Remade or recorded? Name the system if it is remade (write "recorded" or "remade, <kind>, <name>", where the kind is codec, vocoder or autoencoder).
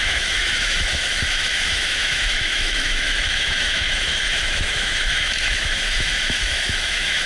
remade, autoencoder, DAC-VAE